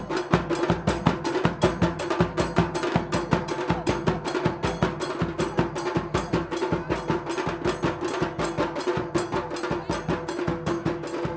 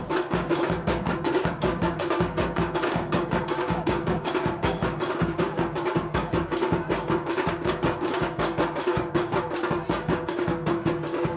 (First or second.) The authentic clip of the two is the first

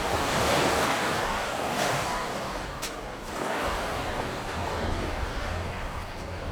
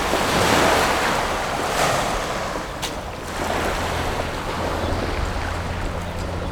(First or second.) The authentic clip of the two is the second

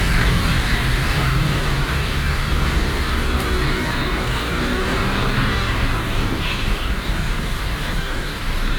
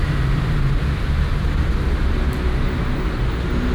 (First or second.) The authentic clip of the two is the second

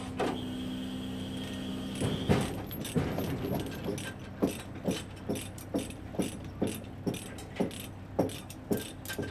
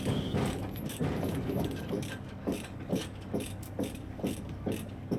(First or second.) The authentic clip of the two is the first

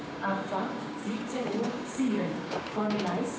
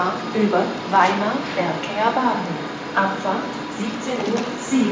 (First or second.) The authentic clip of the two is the second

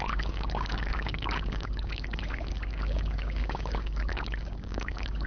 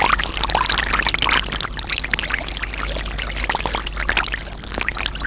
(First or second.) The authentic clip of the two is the second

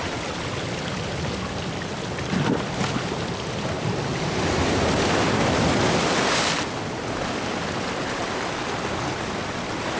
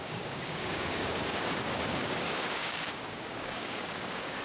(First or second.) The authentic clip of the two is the first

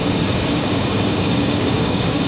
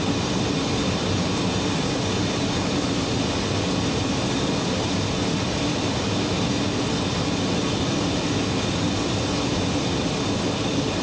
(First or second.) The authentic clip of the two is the second